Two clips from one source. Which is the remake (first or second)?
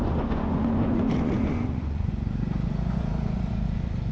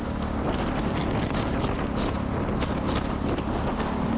first